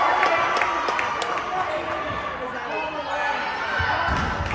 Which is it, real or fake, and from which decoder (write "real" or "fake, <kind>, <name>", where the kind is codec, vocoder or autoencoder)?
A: real